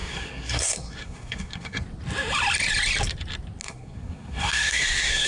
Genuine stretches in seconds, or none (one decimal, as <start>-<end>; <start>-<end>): 1.8-3.6